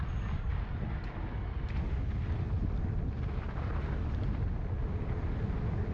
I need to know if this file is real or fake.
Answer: real